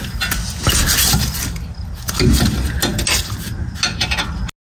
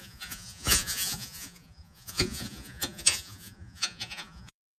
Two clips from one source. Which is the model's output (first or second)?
second